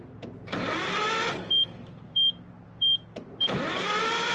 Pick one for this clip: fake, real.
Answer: real